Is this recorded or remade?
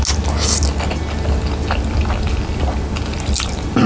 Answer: recorded